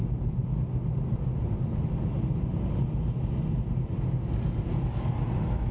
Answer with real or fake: real